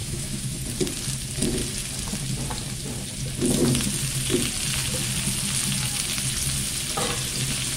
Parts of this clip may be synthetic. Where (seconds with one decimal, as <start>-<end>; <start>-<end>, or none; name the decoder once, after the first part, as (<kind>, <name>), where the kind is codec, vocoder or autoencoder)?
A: 0.0-0.6 (autoencoder, DAC-VAE)